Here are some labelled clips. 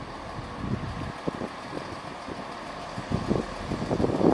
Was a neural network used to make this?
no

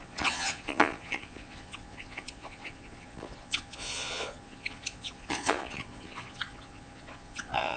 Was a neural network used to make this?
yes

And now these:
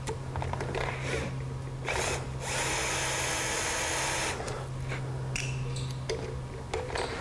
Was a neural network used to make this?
no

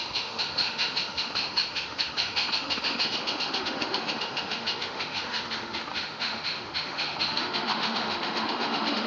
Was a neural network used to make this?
yes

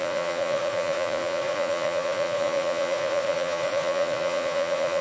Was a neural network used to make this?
yes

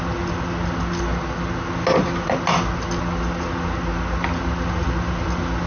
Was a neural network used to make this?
no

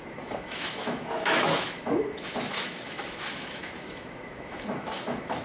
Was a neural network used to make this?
yes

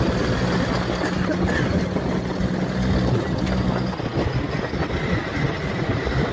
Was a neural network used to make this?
no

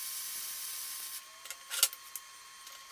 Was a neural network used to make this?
no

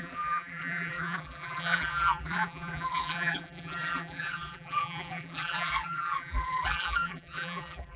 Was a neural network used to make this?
yes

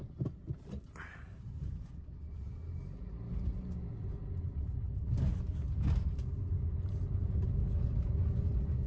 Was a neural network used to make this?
no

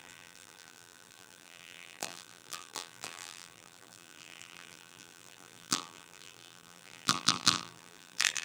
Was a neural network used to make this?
yes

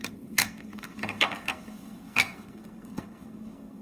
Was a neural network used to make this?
yes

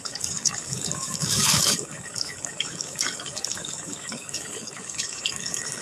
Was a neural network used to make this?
yes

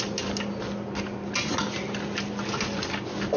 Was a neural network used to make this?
no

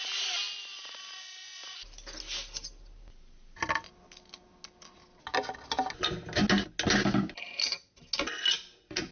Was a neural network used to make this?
no